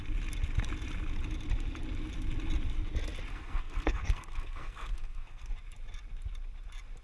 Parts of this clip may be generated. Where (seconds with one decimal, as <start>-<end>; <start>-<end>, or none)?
3.3-5.5

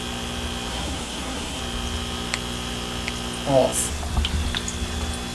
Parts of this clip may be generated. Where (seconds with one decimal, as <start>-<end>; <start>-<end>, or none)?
0.7-1.6

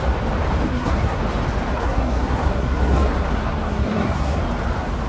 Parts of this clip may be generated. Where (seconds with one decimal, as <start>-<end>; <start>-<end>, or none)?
0.7-1.2; 1.7-4.4